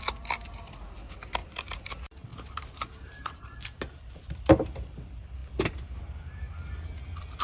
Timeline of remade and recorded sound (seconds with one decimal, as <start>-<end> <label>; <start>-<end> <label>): 0.0-1.4 recorded; 1.4-1.9 remade; 1.9-2.3 recorded; 2.3-4.4 remade; 4.4-7.4 recorded